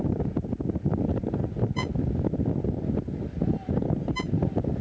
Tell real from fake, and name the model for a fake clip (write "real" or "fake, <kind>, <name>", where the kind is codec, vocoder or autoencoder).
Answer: real